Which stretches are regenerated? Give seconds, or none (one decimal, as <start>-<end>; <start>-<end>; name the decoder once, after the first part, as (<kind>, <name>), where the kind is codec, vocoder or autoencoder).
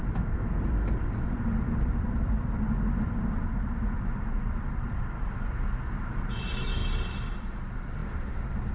0.0-8.7 (vocoder, BigVGAN v2)